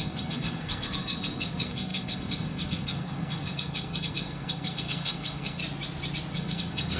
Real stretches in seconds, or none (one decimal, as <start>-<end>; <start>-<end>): 5.6-6.3